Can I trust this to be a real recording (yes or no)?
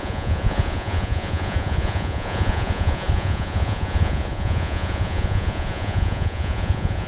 no